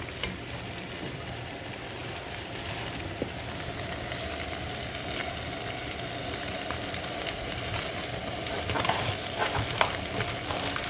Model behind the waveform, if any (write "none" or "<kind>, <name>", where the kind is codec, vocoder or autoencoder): none